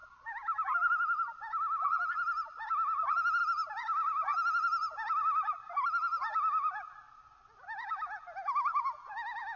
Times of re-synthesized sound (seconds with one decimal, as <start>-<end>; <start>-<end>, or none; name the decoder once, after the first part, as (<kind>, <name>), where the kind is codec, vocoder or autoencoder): none